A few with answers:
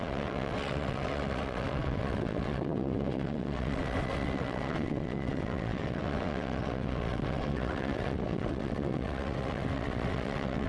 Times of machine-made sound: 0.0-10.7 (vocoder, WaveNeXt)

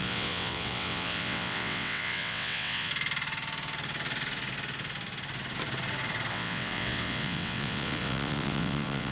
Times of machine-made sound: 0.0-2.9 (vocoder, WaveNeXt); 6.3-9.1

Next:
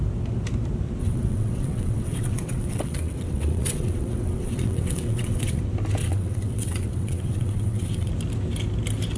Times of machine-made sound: 1.0-5.6 (vocoder, WaveNeXt); 6.0-8.1

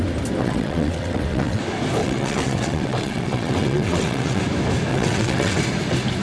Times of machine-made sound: 0.4-1.6 (vocoder, WaveNeXt); 2.0-4.4; 4.9-5.6

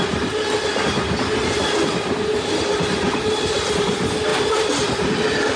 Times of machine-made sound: none